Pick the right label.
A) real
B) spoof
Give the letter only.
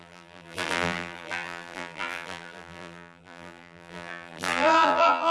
B